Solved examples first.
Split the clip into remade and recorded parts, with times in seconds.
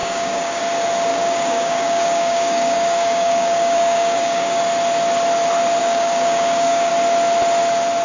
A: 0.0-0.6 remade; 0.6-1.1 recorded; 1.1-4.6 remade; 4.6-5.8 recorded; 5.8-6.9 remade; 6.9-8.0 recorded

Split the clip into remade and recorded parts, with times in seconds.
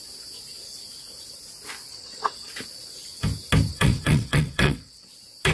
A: 0.0-1.9 recorded; 1.9-2.5 remade; 2.5-3.7 recorded; 3.7-5.1 remade; 5.1-5.5 recorded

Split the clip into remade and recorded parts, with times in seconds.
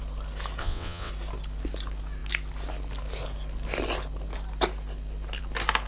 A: 0.0-0.6 recorded; 0.6-1.1 remade; 1.1-5.9 recorded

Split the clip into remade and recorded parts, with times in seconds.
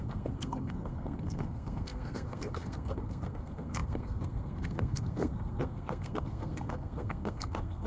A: 0.0-7.9 remade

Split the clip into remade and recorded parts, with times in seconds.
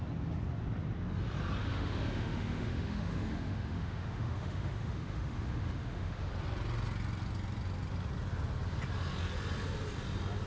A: 0.0-1.6 recorded; 1.6-6.3 remade; 6.3-10.5 recorded